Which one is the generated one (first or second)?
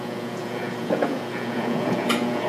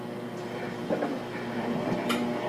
first